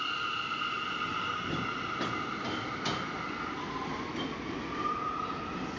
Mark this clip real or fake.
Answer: real